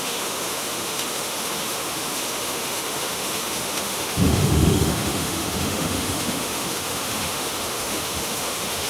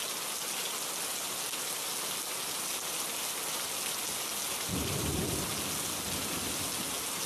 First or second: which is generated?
first